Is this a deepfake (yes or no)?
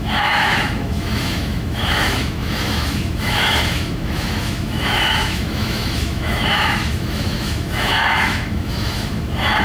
yes